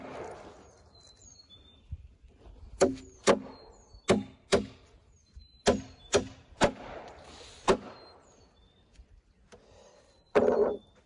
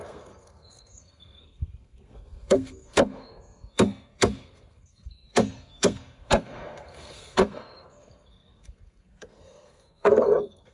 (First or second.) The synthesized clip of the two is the second